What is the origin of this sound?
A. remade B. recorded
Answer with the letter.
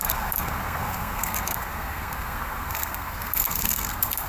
A